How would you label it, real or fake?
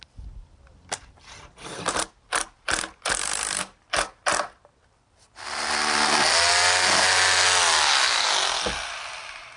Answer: real